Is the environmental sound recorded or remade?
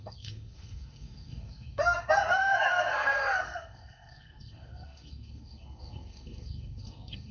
remade